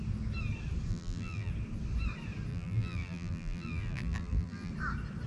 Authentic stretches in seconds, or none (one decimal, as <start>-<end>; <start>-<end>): 0.0-0.9; 1.5-2.5; 4.7-5.3